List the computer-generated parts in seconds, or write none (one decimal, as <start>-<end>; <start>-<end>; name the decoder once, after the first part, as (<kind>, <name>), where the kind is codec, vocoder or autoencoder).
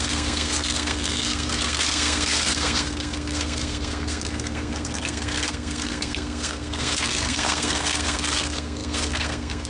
0.0-9.7 (codec, SNAC)